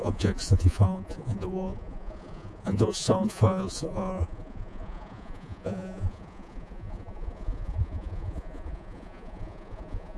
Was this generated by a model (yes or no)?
yes